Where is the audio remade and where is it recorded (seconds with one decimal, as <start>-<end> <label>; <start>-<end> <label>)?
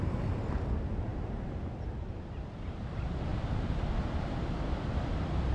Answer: 0.0-1.1 recorded; 1.1-1.8 remade; 1.8-5.5 recorded